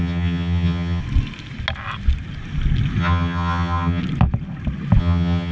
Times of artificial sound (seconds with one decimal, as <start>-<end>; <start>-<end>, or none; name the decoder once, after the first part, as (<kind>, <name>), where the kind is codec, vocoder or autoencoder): 0.0-1.0 (vocoder, HiFi-GAN); 3.0-4.0; 5.0-5.5